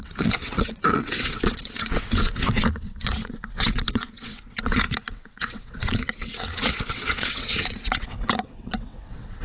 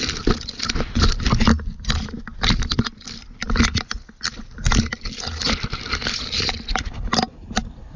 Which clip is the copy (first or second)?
first